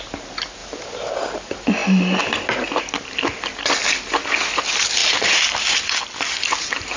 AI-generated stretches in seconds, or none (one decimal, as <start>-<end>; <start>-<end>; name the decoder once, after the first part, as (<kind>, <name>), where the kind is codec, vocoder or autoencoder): 0.6-1.1 (vocoder, BigVGAN v2); 5.0-5.9